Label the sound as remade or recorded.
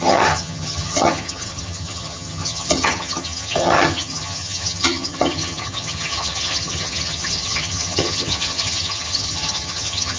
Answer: remade